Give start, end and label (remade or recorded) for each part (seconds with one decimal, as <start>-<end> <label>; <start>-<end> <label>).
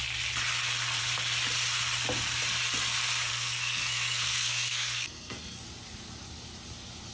0.0-3.3 recorded; 3.3-5.6 remade; 5.6-7.1 recorded